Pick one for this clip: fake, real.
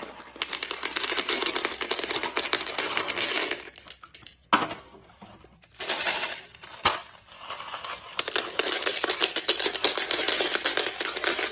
real